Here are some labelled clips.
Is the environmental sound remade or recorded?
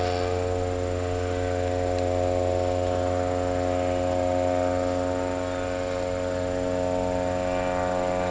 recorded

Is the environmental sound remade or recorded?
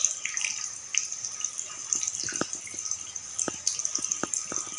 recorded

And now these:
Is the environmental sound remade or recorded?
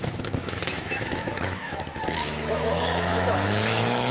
remade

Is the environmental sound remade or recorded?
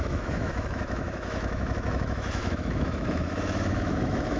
remade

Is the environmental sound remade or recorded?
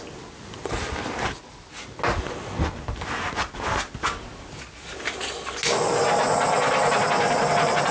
recorded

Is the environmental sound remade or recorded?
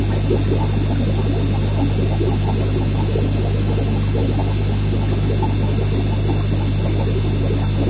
recorded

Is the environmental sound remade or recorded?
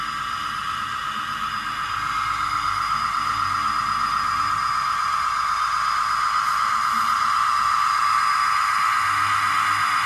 recorded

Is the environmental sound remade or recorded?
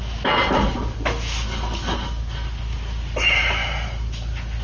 recorded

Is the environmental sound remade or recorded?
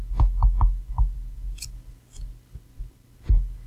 recorded